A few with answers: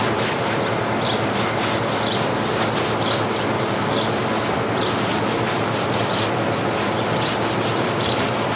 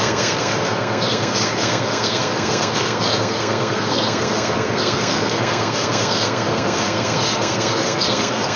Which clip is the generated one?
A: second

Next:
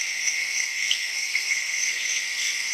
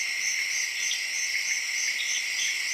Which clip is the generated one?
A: first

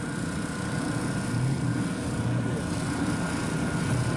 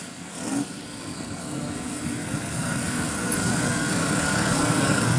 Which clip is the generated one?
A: second